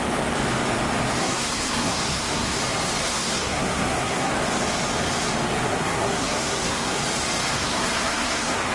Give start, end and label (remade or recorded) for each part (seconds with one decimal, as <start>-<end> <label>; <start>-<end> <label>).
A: 0.0-1.2 recorded; 1.2-2.6 remade; 2.6-3.0 recorded; 3.0-4.3 remade; 4.3-5.7 recorded; 5.7-7.0 remade; 7.0-7.5 recorded; 7.5-8.7 remade